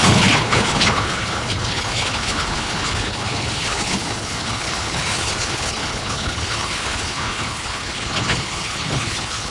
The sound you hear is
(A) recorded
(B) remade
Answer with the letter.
B